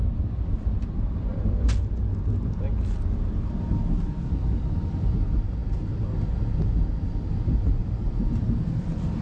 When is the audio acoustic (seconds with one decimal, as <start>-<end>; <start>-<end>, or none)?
0.0-7.8; 8.7-9.2